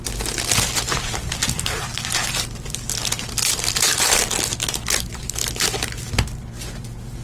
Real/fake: real